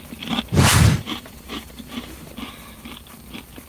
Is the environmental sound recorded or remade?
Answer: recorded